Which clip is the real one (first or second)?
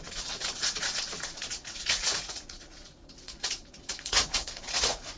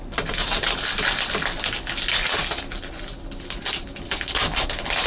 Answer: second